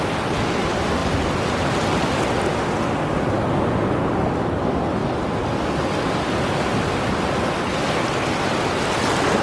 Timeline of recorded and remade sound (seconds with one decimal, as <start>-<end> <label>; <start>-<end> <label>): 0.0-9.4 recorded